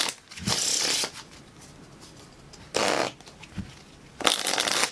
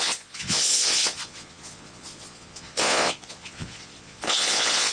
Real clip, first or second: first